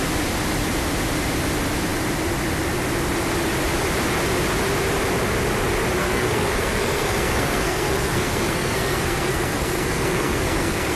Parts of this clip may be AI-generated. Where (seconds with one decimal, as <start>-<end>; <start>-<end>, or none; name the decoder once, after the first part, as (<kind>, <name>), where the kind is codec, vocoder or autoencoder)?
6.0-11.0 (codec, SNAC)